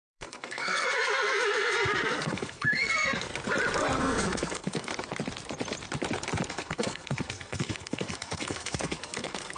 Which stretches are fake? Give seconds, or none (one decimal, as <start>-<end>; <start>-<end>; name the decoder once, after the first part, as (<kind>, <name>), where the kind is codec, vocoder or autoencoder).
0.0-3.3 (codec, SNAC); 4.0-4.9; 6.5-9.6